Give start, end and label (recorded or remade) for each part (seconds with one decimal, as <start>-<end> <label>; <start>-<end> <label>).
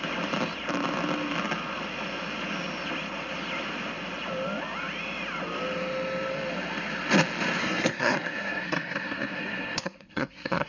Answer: 0.0-7.6 recorded; 7.6-10.7 remade